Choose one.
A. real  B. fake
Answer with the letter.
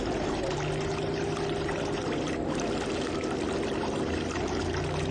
A